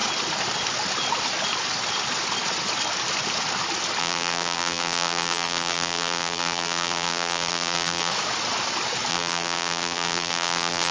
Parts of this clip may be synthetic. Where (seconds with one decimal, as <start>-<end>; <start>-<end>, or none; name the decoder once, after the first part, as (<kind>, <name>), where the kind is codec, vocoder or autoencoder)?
4.0-8.1 (vocoder, BigVGAN v2); 9.1-10.9